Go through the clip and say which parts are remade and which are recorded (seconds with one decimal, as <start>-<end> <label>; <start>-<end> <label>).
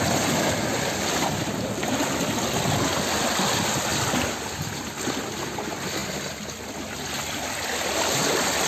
0.0-8.7 recorded